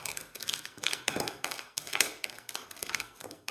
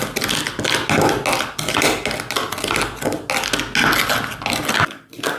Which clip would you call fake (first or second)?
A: first